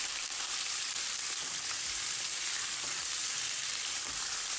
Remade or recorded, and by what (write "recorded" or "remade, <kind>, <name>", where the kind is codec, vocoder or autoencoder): remade, vocoder, BigVGAN v2